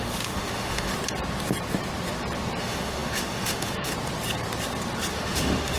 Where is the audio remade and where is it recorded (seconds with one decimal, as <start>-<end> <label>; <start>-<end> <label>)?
0.0-0.9 remade; 0.9-2.6 recorded; 2.6-3.9 remade; 3.9-5.1 recorded; 5.1-5.8 remade